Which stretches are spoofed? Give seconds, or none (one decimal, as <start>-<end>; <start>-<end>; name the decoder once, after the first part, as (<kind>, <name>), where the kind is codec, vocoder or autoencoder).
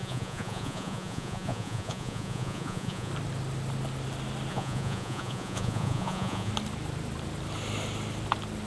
0.0-3.1 (vocoder, Vocos); 4.5-6.5